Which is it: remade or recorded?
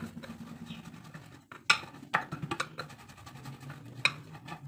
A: recorded